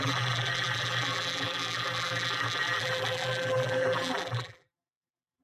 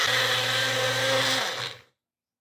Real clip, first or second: second